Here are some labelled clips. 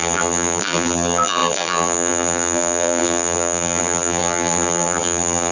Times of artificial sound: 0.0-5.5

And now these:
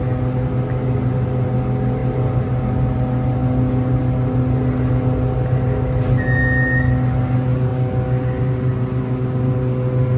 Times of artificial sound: none

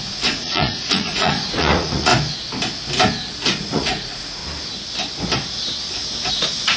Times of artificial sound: 0.0-2.1; 3.6-4.4; 6.3-6.8

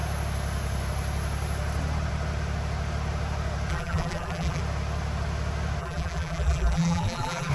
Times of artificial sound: 3.7-4.6; 5.8-7.5